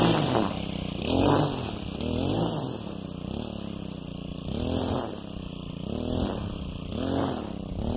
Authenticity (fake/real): real